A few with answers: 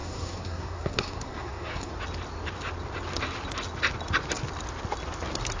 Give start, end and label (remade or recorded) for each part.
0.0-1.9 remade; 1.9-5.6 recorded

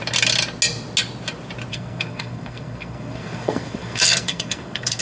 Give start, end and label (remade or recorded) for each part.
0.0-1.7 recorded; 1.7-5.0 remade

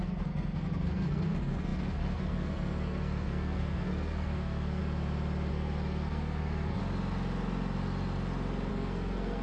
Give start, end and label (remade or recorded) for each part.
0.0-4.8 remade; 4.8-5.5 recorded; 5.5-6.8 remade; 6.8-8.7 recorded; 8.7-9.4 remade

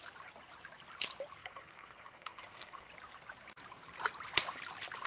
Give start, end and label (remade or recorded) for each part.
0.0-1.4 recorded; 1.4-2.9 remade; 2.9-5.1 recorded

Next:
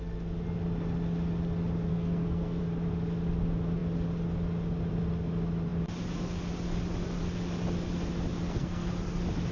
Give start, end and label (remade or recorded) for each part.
0.0-1.9 recorded; 1.9-2.6 remade; 2.6-8.4 recorded; 8.4-8.9 remade; 8.9-9.5 recorded

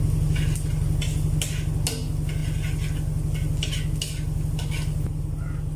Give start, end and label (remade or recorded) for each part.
0.0-5.8 recorded

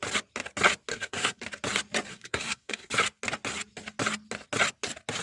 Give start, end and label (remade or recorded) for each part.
0.0-0.9 recorded; 0.9-1.4 remade; 1.4-2.1 recorded; 2.1-2.9 remade; 2.9-5.2 recorded

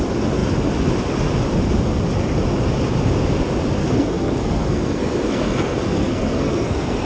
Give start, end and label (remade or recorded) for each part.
0.0-3.8 recorded; 3.8-7.1 remade